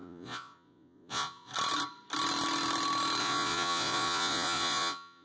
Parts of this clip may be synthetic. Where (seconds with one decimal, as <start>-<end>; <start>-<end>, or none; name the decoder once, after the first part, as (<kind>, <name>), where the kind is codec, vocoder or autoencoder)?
0.0-1.5 (vocoder, Vocos); 3.2-5.2